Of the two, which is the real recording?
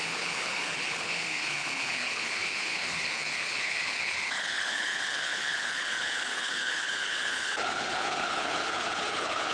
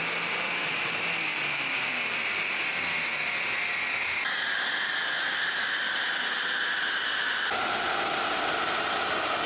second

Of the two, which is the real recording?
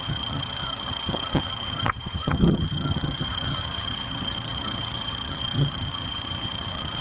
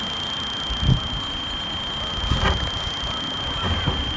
second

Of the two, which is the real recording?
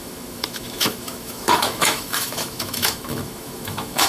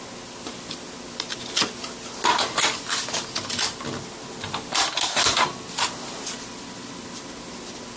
second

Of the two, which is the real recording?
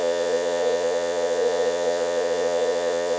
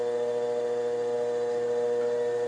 second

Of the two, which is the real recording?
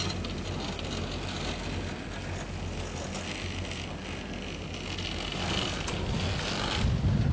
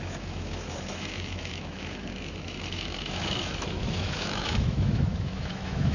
first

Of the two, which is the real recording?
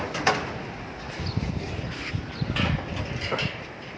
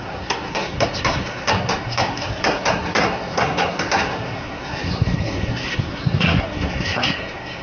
first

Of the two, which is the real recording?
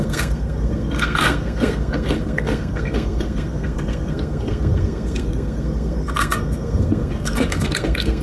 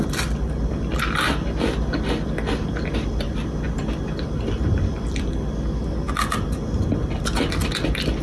second